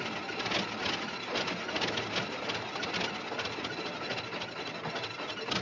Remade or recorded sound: recorded